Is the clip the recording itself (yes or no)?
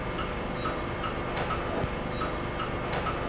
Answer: yes